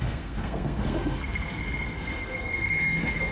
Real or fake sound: fake